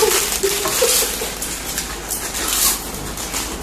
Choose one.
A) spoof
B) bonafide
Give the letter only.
B